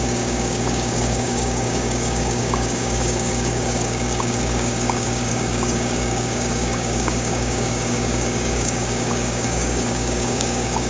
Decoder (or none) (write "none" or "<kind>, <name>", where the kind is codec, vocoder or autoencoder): codec, DAC